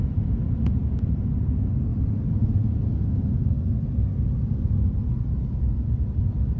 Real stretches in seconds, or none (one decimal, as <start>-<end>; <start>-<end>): 0.0-6.6